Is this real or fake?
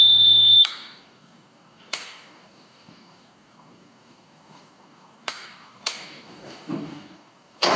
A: fake